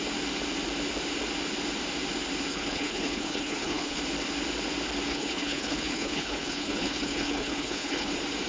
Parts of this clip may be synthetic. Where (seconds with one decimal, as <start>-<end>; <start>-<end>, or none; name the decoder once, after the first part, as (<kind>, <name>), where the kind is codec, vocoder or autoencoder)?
2.5-4.0 (codec, HILCodec); 5.1-8.1